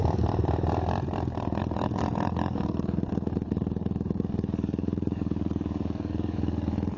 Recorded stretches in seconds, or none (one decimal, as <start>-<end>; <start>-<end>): 0.0-1.6